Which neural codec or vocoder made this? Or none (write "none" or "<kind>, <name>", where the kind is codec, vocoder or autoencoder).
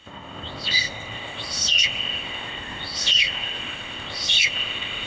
codec, ZipCodec